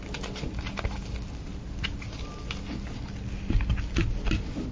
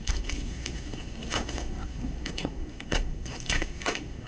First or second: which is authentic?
first